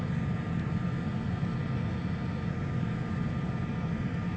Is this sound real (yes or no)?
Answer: yes